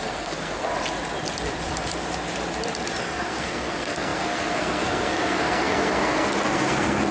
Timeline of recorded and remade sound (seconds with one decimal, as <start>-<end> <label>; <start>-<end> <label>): 0.0-0.7 remade; 0.7-3.0 recorded; 3.0-7.1 remade